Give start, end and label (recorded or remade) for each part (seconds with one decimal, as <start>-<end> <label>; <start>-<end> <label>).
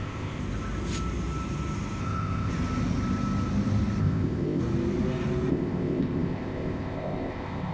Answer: 0.0-0.4 remade; 0.4-2.0 recorded; 2.0-2.5 remade; 2.5-4.0 recorded; 4.0-4.6 remade; 4.6-5.5 recorded; 5.5-7.7 remade